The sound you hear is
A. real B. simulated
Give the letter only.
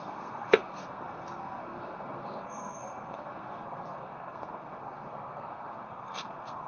B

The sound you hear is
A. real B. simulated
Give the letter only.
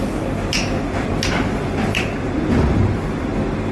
B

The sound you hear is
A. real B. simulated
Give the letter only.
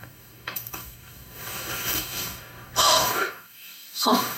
B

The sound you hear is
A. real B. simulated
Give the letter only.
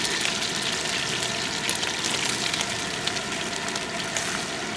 A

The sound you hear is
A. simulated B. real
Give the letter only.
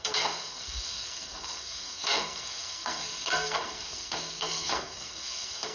A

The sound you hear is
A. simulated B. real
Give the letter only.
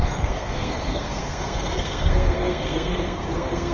A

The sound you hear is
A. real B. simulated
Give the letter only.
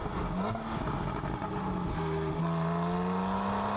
A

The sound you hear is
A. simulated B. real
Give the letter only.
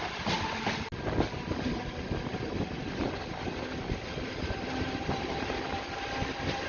B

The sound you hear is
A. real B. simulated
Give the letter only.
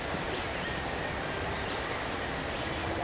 A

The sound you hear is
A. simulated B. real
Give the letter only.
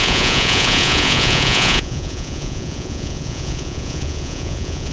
A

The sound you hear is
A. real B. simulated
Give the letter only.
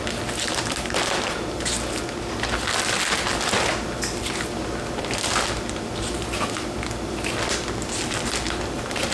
A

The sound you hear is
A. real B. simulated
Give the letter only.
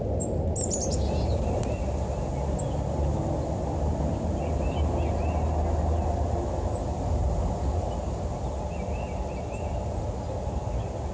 A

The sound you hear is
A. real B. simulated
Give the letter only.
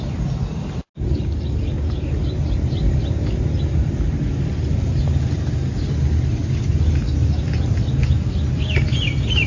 A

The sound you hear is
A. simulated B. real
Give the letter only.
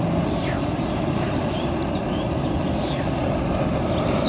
B